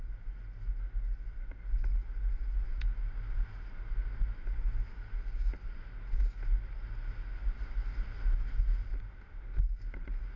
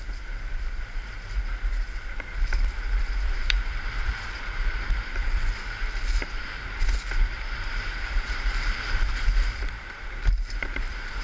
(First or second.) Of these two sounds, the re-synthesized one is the second